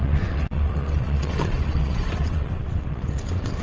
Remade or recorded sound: remade